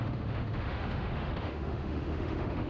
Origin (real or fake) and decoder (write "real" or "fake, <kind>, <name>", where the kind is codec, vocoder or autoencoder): fake, autoencoder, DAC-VAE